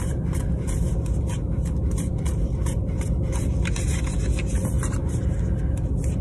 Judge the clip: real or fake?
real